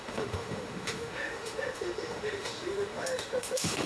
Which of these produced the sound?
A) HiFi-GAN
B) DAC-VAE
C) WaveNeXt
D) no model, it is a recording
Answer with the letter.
B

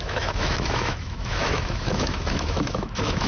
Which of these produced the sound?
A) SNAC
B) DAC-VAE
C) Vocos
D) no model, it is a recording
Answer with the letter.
B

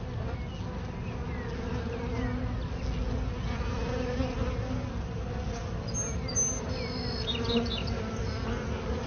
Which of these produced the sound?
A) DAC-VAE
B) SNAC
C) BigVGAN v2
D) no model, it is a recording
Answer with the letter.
D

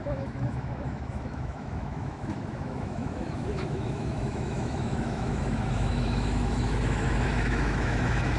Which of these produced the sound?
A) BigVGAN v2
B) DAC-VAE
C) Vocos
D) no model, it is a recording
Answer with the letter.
B